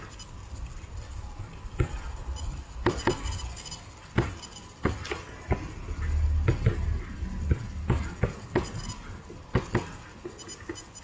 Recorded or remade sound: recorded